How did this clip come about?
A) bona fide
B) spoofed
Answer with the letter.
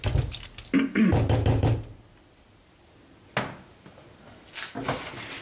A